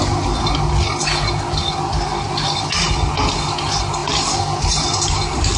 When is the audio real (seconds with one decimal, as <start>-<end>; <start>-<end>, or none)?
0.0-5.6